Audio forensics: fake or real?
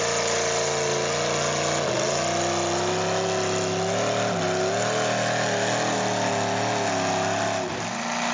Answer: real